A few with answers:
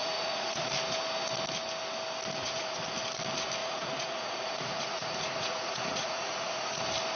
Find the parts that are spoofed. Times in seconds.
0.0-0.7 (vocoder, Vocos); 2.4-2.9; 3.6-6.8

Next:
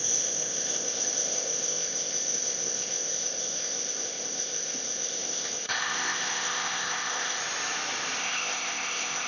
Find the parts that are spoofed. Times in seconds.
0.0-7.4 (codec, ZipCodec); 8.2-9.3

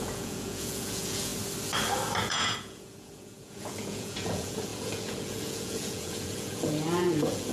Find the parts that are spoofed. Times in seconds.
0.0-1.3 (vocoder, Vocos); 2.2-7.5

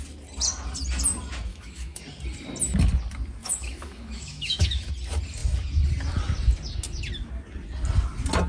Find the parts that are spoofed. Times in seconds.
1.5-2.0 (autoencoder, DAC-VAE); 3.4-4.9

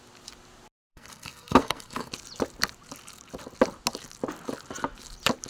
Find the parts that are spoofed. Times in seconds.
0.8-2.1 (codec, SNAC)

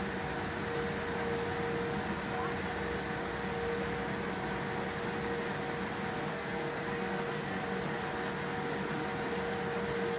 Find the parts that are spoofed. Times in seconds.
6.3-7.6 (codec, SNAC)

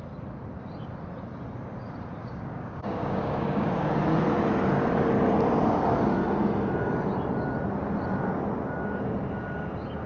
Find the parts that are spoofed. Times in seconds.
2.2-4.0 (codec, DAC)